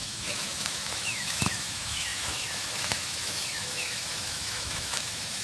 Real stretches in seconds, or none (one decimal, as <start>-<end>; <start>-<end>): none